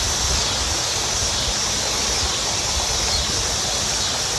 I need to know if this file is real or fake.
real